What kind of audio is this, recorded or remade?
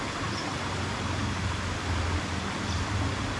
recorded